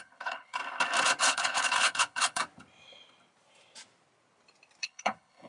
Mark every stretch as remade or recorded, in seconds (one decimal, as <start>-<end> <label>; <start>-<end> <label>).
0.0-0.6 remade; 0.6-1.2 recorded; 1.2-2.4 remade; 2.4-4.8 recorded; 4.8-5.5 remade